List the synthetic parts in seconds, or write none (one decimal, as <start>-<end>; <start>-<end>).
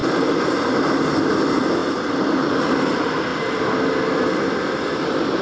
1.8-2.7